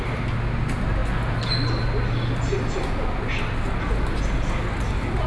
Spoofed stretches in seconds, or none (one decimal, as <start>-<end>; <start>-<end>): none

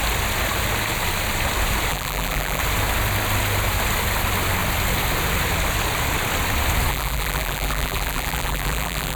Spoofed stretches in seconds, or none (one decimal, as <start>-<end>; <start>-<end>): 1.9-2.6; 6.9-9.2

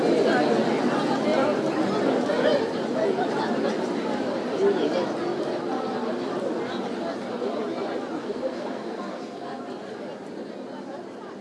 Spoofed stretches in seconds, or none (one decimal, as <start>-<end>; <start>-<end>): 8.2-9.6

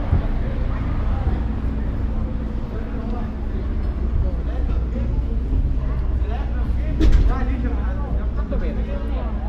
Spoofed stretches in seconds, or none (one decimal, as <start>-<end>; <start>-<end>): none

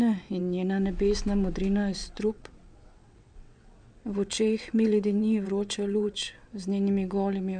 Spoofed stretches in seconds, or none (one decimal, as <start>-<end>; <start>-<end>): 2.0-6.5

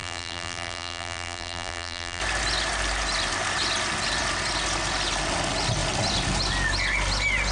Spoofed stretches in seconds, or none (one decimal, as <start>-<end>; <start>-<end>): 0.0-2.2

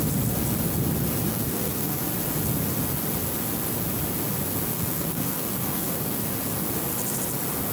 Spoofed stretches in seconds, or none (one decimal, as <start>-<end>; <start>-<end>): 1.3-2.0; 4.7-6.2

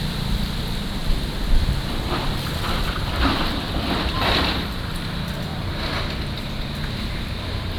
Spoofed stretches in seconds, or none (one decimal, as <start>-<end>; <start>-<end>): 1.0-4.9